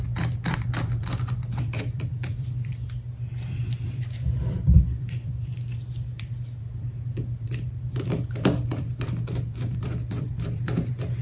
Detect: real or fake fake